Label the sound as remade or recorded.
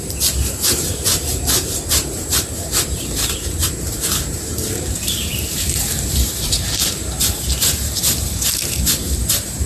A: remade